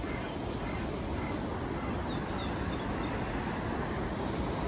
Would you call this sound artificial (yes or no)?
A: no